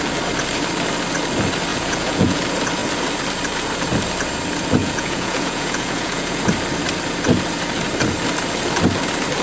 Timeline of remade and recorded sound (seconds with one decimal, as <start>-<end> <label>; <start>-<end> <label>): 0.0-1.7 recorded; 1.7-2.4 remade; 2.4-4.8 recorded; 4.8-6.4 remade; 6.4-9.4 recorded